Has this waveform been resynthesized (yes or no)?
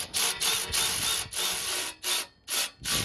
no